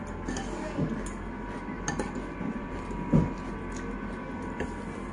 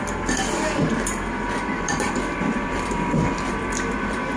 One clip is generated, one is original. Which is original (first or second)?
first